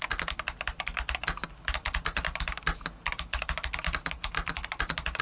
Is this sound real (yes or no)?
yes